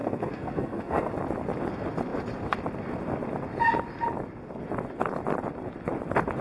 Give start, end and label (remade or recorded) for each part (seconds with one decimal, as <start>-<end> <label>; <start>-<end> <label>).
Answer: 0.0-1.1 remade; 1.1-6.4 recorded